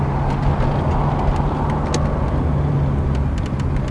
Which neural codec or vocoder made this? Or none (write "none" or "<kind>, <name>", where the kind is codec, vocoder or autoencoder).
none